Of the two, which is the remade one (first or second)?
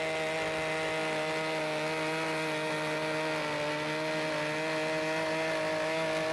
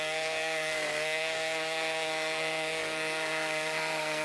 second